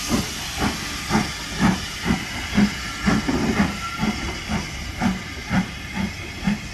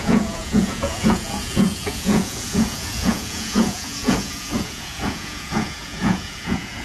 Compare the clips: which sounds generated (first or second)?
second